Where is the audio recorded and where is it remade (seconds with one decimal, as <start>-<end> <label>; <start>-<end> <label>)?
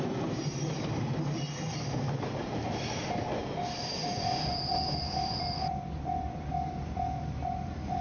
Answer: 0.0-3.4 recorded; 3.4-8.0 remade